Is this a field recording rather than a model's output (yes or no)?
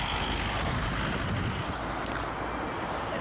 yes